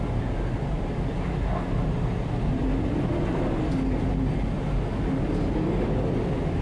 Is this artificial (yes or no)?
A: no